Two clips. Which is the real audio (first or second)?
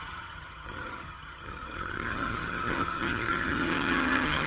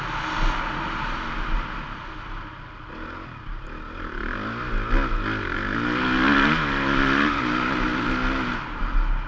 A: second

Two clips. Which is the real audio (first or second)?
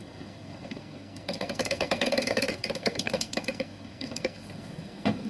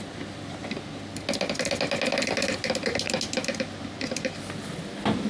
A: second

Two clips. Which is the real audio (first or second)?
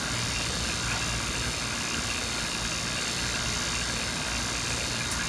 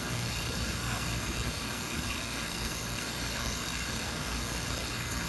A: first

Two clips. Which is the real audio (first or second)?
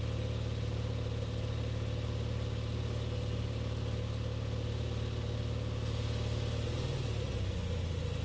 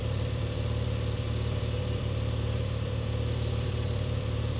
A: first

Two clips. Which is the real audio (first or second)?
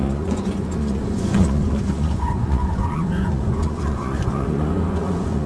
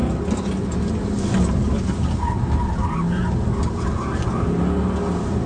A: second